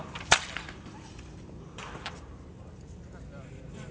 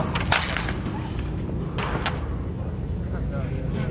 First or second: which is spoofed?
first